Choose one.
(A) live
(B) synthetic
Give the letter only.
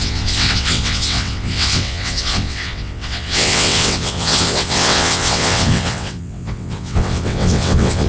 B